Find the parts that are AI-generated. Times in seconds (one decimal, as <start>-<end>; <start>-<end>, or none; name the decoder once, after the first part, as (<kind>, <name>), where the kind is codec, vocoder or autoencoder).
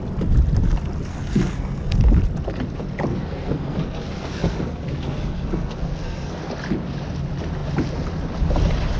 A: 1.1-2.0 (codec, SNAC); 3.1-6.4